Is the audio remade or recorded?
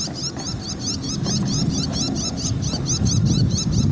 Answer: recorded